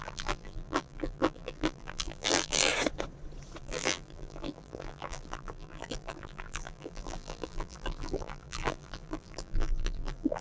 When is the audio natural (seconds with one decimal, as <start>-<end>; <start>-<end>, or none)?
2.7-3.6